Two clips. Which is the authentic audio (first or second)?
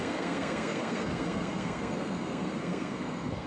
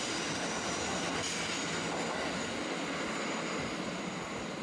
second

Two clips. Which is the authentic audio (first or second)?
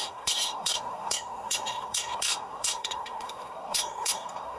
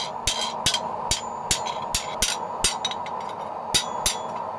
second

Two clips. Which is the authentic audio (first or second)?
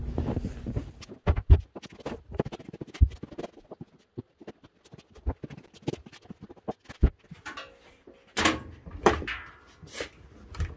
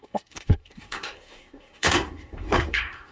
first